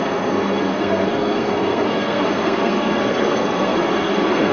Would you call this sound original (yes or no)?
no